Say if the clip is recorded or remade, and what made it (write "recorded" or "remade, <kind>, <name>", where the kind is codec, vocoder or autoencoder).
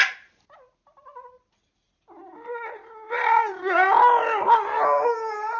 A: recorded